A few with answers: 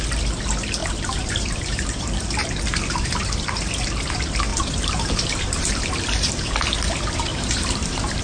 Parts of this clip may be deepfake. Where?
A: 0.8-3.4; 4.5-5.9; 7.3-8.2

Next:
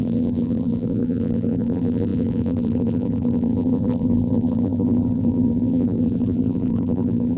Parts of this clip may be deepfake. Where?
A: 0.0-7.4

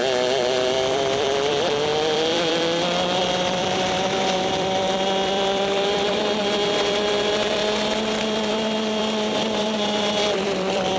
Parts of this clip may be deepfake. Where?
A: 0.0-7.6; 8.2-9.0; 9.6-11.0

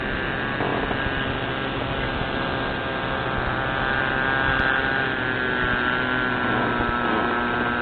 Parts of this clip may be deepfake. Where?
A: none